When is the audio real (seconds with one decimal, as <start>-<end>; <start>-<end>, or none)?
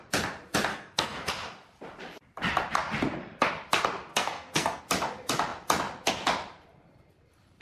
0.0-0.7; 1.3-4.1; 4.8-7.6